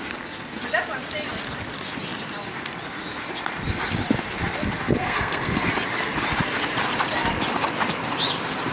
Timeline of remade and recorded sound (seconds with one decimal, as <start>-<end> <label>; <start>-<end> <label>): 0.0-5.0 recorded; 5.0-5.7 remade; 5.7-8.7 recorded